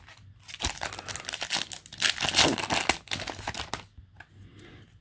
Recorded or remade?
recorded